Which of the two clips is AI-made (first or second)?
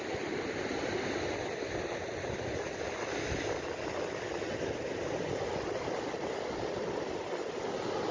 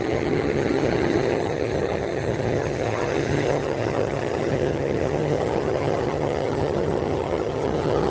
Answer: second